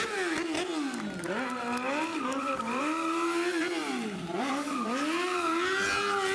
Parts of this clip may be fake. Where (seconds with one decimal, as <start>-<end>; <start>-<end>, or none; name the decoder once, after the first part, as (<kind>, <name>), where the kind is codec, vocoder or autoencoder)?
2.1-2.8 (vocoder, BigVGAN v2); 3.8-4.4